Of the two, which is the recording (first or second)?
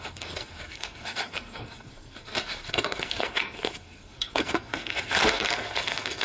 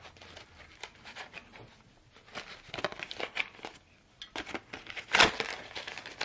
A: second